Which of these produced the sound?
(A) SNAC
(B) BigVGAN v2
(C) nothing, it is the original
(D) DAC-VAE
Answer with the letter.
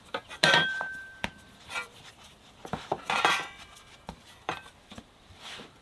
B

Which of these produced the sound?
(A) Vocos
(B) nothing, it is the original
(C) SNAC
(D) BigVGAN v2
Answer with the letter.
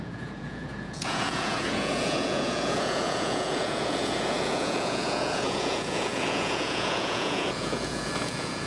A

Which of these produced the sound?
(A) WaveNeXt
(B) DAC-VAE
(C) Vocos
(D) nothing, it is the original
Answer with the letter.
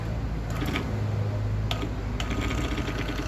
D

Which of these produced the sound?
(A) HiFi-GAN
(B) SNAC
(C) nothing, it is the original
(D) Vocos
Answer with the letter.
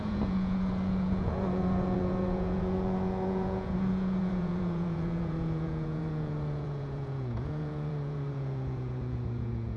D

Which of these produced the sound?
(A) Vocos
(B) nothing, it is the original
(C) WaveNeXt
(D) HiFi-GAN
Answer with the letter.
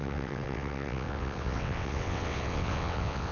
C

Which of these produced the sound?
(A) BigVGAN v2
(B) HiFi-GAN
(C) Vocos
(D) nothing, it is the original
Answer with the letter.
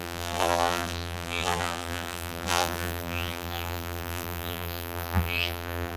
A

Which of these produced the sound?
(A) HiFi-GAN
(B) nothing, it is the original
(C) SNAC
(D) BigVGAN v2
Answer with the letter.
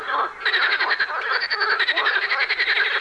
B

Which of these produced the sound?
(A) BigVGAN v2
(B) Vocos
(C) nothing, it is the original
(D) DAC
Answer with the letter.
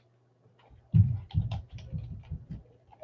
A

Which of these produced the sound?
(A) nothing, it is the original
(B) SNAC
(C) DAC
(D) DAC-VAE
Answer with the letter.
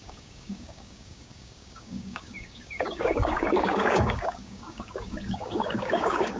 C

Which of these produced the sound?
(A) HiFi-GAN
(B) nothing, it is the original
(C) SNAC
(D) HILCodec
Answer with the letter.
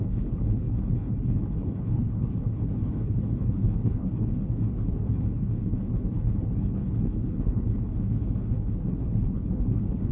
D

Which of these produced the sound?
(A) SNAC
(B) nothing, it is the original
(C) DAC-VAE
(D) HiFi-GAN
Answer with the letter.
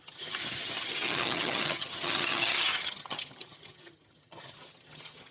D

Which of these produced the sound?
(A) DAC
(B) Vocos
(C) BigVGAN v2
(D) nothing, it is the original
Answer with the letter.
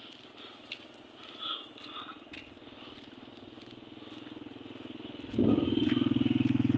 D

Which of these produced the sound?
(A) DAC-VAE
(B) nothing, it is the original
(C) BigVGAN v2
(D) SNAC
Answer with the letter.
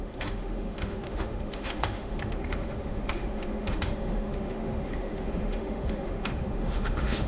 A